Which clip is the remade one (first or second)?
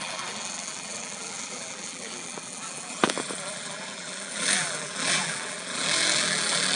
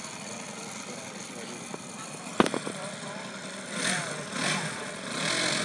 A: first